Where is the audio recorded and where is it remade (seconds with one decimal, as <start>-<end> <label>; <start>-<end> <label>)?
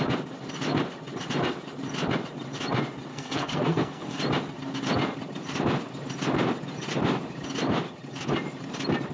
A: 0.0-3.1 recorded; 3.1-4.2 remade; 4.2-9.1 recorded